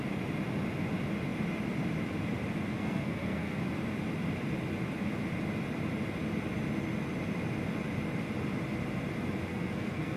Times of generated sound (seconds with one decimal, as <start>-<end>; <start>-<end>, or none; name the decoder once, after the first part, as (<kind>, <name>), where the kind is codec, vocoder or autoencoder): 2.7-3.6 (codec, SNAC); 9.5-10.2